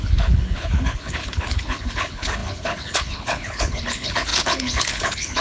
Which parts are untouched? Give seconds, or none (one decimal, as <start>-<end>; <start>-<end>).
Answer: none